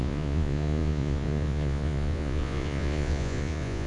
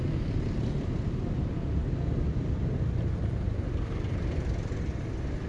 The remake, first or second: first